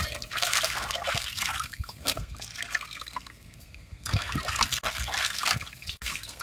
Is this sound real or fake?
fake